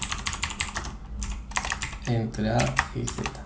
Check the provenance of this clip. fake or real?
real